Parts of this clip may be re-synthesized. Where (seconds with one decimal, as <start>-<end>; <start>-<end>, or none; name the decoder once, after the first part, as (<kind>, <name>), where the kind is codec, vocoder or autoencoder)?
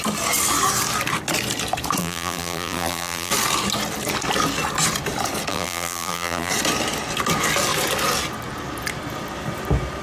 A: 2.0-3.3 (vocoder, BigVGAN v2); 5.5-6.5